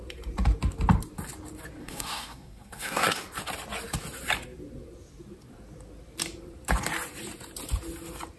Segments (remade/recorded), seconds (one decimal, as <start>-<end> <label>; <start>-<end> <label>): 0.0-1.8 recorded; 1.8-3.2 remade; 3.2-8.4 recorded